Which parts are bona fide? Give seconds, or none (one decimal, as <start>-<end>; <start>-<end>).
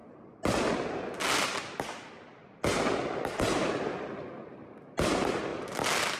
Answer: 0.0-6.2